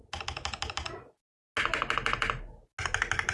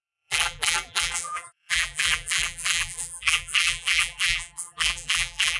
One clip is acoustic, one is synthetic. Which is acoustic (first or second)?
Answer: first